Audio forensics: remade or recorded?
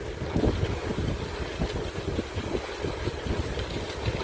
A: recorded